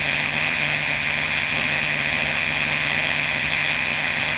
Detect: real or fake fake